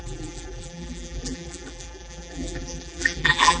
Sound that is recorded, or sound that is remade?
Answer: remade